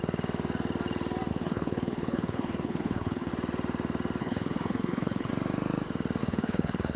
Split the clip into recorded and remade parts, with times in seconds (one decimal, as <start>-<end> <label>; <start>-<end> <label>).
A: 0.0-1.3 recorded; 1.3-3.3 remade; 3.3-4.2 recorded; 4.2-5.3 remade; 5.3-6.2 recorded; 6.2-7.0 remade

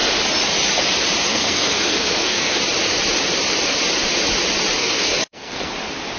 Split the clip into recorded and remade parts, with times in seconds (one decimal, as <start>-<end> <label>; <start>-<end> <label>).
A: 0.0-1.3 recorded; 1.3-2.6 remade; 2.6-4.8 recorded; 4.8-5.7 remade; 5.7-6.2 recorded

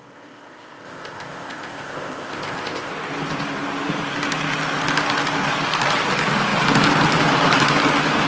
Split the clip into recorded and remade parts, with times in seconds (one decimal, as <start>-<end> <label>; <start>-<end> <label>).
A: 0.0-2.9 remade; 2.9-8.3 recorded